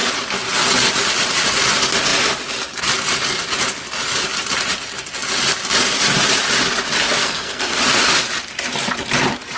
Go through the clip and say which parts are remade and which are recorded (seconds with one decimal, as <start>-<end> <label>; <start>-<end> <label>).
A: 0.0-7.2 recorded; 7.2-7.8 remade; 7.8-9.6 recorded